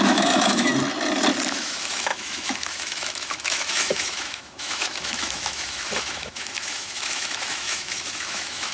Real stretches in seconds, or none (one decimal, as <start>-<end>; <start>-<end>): 0.7-1.5